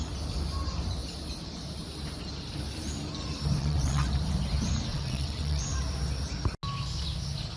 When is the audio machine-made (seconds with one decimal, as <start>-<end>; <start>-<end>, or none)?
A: 3.6-4.1; 4.9-5.6